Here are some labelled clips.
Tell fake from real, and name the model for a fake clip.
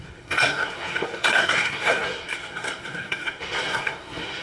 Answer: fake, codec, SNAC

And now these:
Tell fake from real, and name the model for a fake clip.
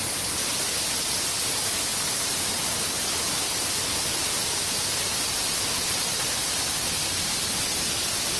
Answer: real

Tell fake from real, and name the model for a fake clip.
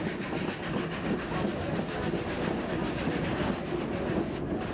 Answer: real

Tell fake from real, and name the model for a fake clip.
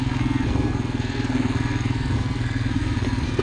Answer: fake, codec, SNAC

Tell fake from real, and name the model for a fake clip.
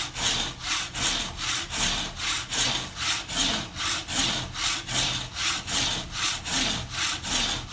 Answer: real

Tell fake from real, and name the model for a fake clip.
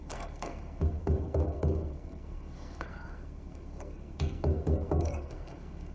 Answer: fake, codec, SNAC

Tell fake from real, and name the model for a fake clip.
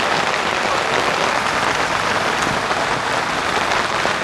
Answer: real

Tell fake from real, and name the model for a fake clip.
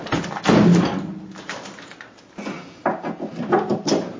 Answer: real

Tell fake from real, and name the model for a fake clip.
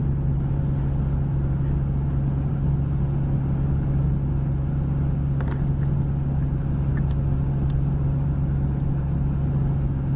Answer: real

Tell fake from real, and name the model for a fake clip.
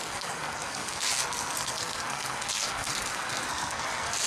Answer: fake, codec, SNAC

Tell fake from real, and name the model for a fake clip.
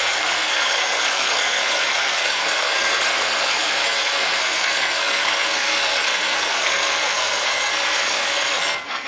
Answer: fake, codec, SNAC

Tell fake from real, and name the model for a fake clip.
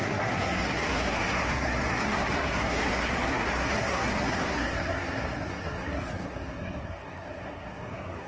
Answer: fake, codec, SNAC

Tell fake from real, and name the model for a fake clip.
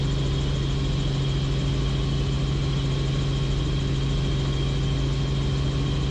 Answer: real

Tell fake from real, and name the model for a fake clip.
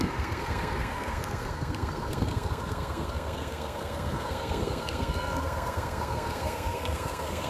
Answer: fake, codec, SNAC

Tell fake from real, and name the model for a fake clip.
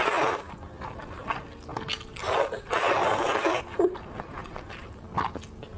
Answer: real